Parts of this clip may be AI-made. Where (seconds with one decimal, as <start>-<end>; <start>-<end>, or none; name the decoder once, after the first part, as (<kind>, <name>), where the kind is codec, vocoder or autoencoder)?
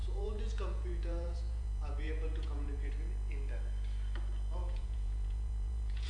0.0-2.9 (vocoder, Vocos); 4.6-6.1